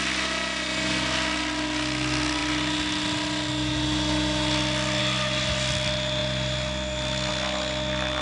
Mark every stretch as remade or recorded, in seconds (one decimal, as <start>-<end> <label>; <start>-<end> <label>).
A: 0.0-8.2 recorded